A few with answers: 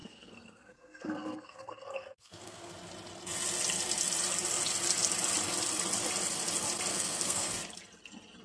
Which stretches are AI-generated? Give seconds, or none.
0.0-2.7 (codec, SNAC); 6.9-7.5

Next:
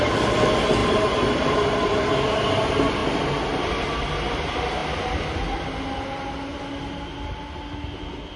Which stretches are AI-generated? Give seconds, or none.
none

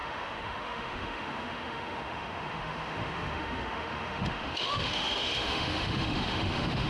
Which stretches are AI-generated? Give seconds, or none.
0.0-6.9 (autoencoder, DAC-VAE)

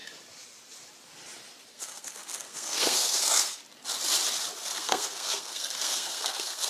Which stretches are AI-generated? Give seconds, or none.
1.7-3.6 (codec, SNAC); 4.6-6.7

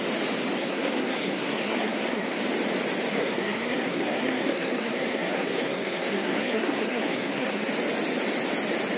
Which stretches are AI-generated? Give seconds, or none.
0.6-2.4 (codec, SNAC); 3.1-7.7

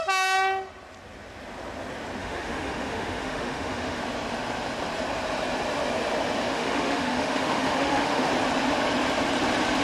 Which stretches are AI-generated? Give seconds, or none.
2.2-4.0 (autoencoder, DAC-VAE); 6.5-8.3

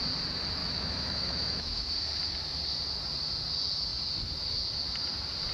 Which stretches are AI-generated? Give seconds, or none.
0.6-1.9 (autoencoder, DAC-VAE)